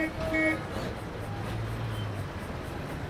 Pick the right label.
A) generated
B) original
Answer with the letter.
B